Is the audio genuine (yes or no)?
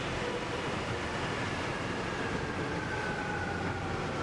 yes